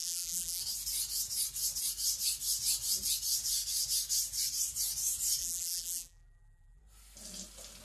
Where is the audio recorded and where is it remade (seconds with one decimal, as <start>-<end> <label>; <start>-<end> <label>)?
0.0-0.6 remade; 0.6-5.4 recorded; 5.4-6.8 remade; 6.8-7.8 recorded